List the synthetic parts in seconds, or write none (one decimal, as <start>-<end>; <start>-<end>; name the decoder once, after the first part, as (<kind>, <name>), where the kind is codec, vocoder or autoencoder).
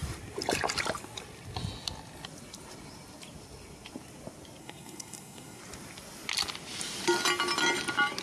4.6-5.6 (codec, SNAC)